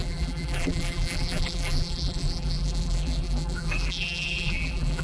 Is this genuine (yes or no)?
no